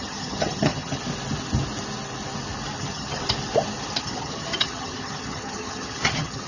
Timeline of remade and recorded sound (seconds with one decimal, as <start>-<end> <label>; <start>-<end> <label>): 0.0-1.0 remade; 1.0-2.8 recorded; 2.8-3.2 remade; 3.2-4.0 recorded; 4.0-6.5 remade